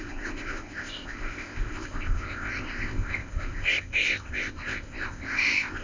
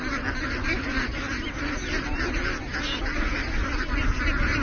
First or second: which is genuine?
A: second